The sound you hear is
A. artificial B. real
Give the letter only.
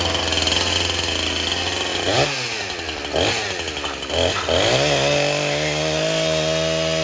B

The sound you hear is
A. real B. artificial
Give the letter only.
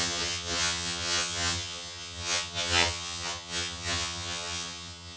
B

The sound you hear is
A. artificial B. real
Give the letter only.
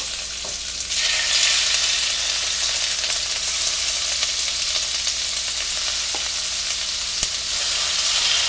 B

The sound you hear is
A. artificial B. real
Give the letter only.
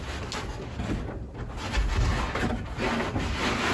B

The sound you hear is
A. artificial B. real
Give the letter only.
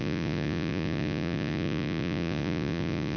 A